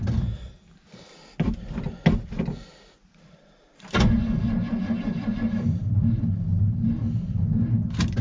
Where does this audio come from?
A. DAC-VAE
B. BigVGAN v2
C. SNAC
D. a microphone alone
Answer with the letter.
D